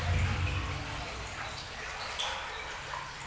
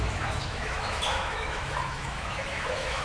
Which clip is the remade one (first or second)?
second